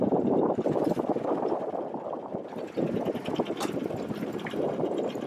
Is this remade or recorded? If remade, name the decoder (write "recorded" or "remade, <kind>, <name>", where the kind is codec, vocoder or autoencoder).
recorded